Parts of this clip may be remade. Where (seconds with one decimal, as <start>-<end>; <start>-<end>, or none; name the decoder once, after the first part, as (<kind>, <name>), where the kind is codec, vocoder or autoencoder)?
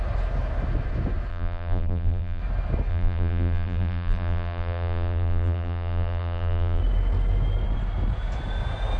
1.3-2.4 (vocoder, BigVGAN v2); 2.9-6.8